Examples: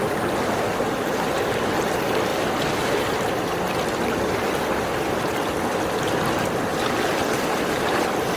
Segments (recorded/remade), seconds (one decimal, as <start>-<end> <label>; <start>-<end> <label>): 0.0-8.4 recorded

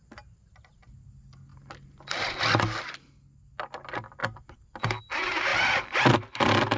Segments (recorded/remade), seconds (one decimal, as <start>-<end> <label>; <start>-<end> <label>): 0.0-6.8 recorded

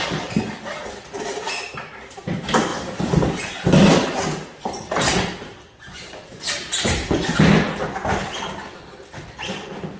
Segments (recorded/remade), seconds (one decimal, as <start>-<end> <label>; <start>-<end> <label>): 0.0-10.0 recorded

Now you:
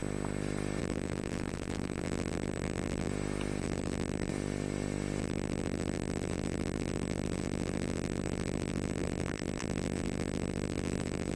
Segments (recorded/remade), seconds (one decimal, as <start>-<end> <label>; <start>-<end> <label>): 0.0-0.8 recorded; 0.8-3.1 remade; 3.1-3.6 recorded; 3.6-4.3 remade; 4.3-5.2 recorded; 5.2-11.4 remade